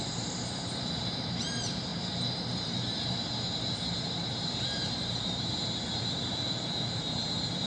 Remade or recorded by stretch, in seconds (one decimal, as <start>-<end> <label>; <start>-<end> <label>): 0.0-7.7 remade